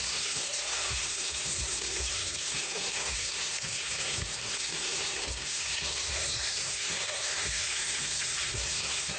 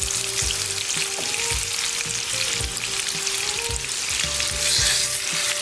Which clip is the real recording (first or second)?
second